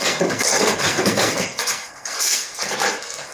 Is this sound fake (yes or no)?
yes